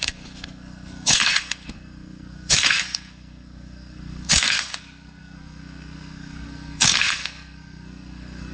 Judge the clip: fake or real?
fake